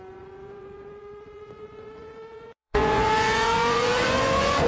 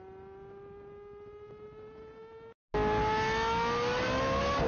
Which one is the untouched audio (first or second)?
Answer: second